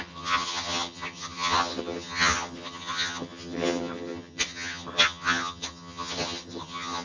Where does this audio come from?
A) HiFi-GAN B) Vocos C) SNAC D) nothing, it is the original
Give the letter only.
A